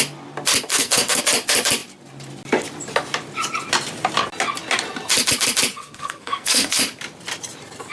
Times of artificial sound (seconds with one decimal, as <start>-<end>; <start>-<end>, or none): 0.7-1.2; 5.7-6.8